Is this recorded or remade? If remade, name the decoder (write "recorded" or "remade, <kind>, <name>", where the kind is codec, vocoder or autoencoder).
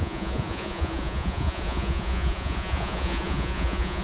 remade, vocoder, Vocos